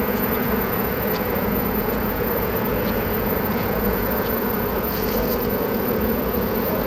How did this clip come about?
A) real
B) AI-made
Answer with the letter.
B